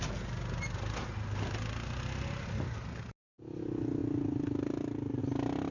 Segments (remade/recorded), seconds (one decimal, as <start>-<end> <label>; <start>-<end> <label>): 0.0-5.7 recorded